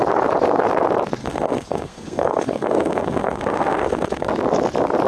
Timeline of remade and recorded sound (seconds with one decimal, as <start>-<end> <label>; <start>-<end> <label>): 0.0-1.2 recorded; 1.2-4.3 remade; 4.3-5.1 recorded